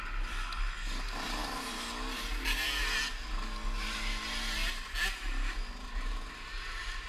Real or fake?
real